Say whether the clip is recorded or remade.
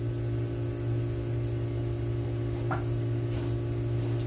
recorded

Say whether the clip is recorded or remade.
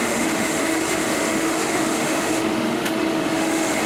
remade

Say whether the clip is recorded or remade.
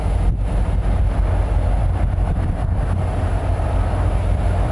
recorded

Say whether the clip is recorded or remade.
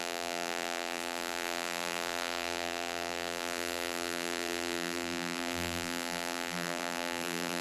remade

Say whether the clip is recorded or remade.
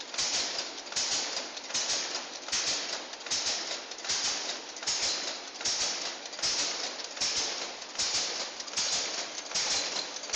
recorded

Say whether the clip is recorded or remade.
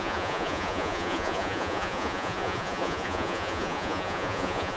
remade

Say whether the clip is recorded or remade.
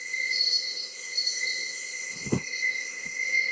remade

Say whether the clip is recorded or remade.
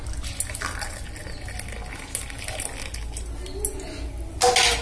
recorded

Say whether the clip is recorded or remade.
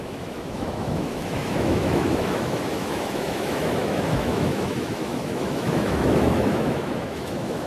remade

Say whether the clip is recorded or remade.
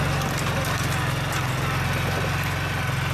recorded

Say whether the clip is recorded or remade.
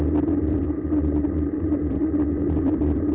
remade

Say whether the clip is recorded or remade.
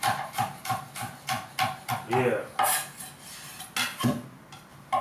recorded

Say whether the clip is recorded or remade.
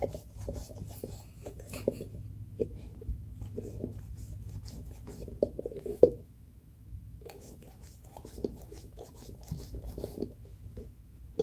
remade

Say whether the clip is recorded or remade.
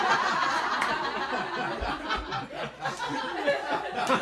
recorded